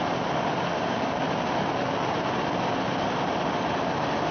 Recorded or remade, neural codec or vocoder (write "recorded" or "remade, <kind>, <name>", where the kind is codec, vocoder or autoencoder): recorded